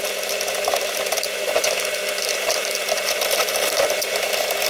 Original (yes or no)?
no